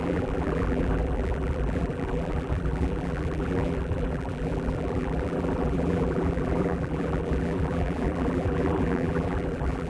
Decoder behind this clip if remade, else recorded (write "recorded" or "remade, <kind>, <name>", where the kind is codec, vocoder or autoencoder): remade, vocoder, BigVGAN v2